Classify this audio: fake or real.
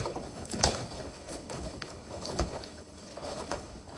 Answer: fake